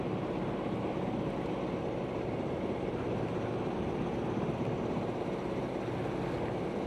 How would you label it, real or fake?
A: real